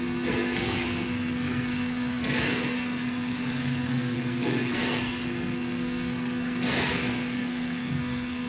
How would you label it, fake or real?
fake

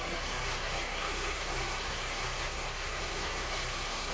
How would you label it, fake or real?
fake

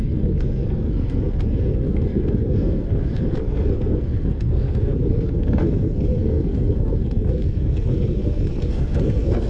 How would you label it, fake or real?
fake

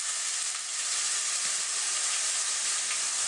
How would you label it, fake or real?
real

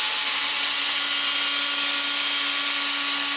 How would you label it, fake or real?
real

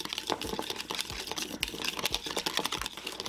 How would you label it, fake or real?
real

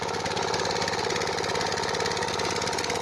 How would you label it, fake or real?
real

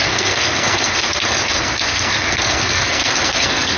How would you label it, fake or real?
fake